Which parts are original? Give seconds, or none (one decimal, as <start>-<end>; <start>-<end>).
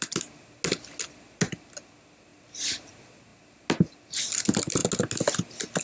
0.0-5.8